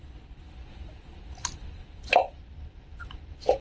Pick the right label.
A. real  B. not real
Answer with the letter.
A